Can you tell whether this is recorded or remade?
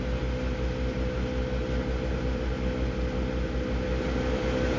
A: recorded